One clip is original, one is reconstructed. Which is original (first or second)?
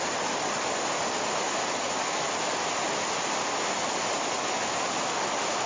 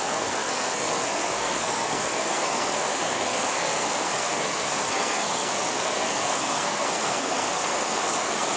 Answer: first